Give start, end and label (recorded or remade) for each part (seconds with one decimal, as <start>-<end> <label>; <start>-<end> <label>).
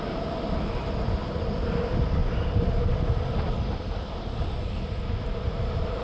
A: 0.0-2.2 recorded; 2.2-6.0 remade